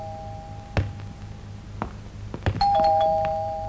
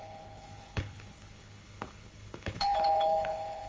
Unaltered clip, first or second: first